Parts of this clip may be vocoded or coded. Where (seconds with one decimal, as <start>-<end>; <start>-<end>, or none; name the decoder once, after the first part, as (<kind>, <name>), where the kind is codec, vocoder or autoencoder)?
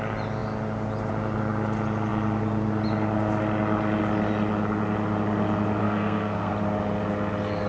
5.8-6.5 (codec, SNAC)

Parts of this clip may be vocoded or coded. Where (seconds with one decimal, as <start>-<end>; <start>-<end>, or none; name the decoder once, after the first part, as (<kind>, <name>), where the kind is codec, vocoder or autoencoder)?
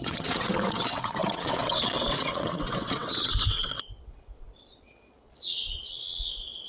0.0-6.7 (vocoder, WaveNeXt)